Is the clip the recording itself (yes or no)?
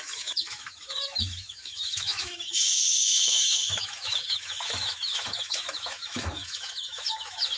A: no